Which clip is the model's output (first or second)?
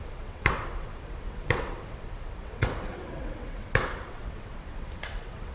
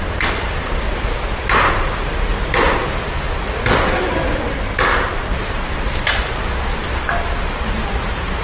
first